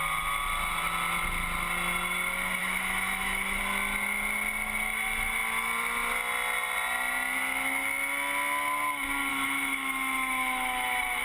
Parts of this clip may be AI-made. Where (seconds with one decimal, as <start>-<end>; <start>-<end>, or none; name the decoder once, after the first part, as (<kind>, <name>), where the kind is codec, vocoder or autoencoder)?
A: 2.6-3.6 (autoencoder, DAC-VAE); 9.3-11.2